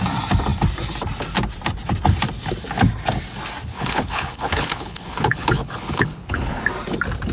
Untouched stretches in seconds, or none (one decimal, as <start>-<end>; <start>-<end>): 0.0-3.7; 6.6-7.3